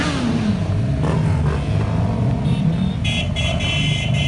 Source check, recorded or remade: recorded